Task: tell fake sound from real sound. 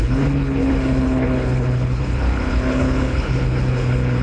fake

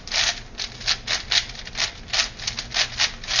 real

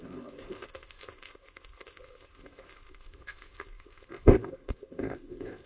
fake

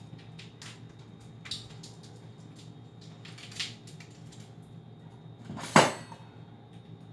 real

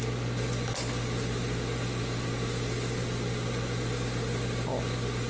real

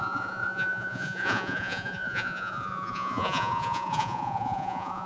fake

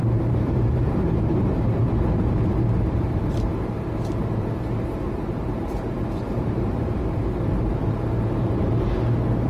fake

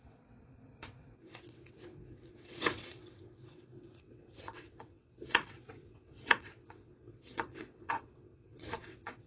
fake